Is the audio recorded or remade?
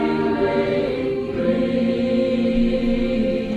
recorded